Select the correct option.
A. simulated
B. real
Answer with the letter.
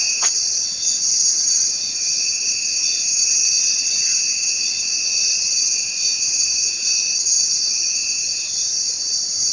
A